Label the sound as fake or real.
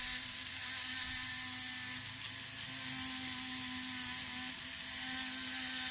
real